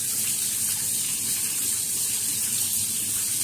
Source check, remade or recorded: recorded